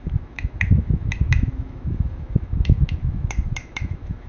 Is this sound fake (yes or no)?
yes